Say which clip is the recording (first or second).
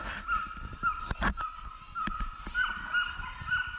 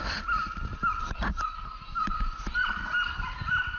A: first